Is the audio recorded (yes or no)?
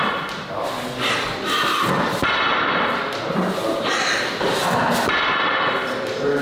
yes